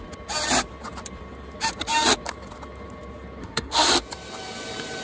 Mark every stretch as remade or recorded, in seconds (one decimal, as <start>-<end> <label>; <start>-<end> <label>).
0.0-3.4 recorded; 3.4-3.9 remade; 3.9-5.0 recorded